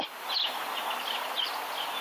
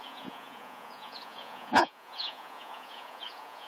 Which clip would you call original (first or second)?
first